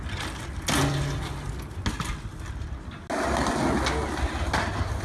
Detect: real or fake real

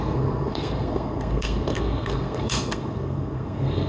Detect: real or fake fake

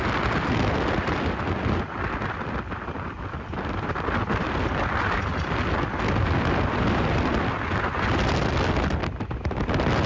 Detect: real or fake real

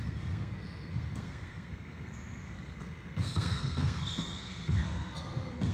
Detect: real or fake fake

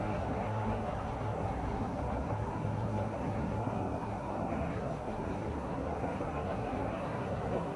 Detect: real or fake fake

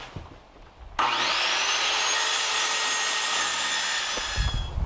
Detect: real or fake real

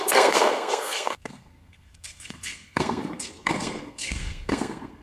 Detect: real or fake fake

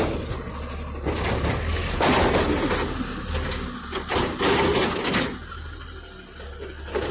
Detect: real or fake real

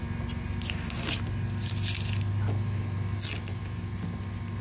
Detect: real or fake real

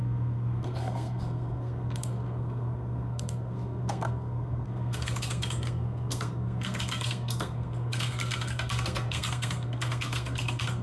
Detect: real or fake fake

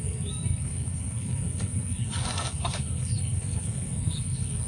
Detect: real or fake fake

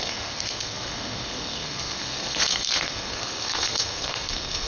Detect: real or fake fake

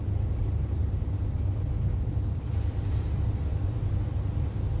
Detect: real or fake real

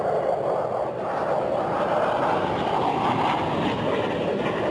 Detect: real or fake real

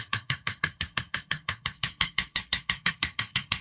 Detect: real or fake fake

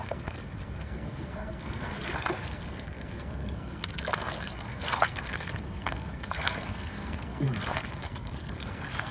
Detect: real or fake fake